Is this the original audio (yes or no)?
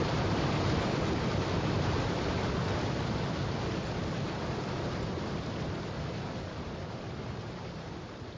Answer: no